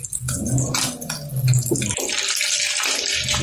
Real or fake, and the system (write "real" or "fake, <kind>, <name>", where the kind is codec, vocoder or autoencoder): real